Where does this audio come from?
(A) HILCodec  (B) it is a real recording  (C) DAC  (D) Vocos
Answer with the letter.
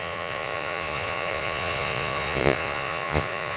D